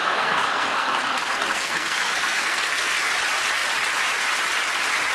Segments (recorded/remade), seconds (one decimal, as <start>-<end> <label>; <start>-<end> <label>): 0.0-3.1 remade; 3.1-5.1 recorded